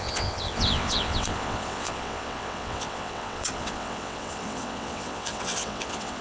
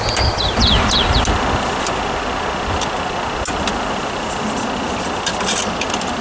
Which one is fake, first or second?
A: first